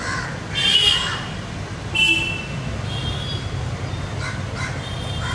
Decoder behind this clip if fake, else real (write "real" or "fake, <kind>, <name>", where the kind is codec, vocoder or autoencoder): real